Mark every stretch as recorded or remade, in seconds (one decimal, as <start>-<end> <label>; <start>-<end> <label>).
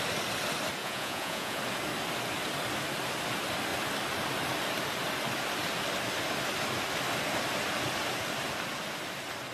0.0-0.8 recorded; 0.8-1.6 remade; 1.6-9.5 recorded